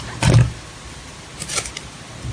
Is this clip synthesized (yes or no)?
no